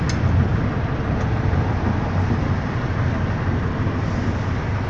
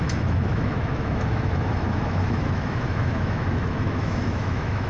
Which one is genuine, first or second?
first